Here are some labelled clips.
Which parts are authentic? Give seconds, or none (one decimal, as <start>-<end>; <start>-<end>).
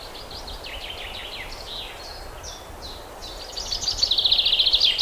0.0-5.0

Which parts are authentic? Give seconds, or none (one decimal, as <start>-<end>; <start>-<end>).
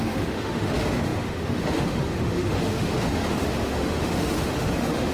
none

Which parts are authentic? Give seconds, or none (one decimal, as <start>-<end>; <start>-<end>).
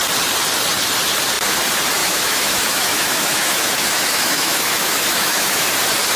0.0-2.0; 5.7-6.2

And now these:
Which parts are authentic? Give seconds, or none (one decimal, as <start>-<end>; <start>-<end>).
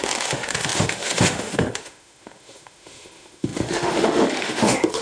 none